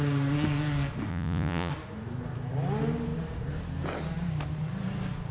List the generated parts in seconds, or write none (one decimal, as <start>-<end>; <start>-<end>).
1.1-1.7